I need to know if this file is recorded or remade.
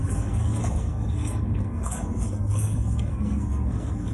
remade